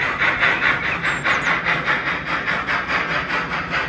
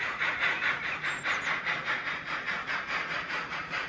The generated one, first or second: second